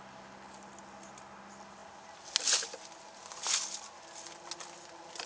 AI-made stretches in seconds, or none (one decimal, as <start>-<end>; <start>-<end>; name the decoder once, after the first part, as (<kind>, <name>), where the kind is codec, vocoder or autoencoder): none